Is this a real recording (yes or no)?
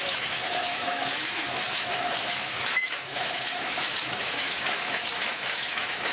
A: no